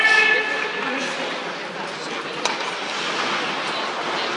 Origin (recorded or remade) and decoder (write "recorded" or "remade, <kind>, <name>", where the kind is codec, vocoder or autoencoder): recorded